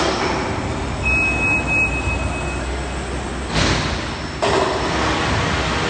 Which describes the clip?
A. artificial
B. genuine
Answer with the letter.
B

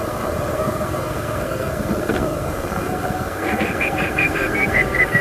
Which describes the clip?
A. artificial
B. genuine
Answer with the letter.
A